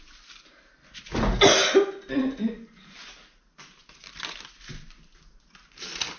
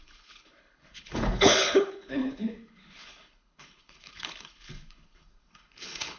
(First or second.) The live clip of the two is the first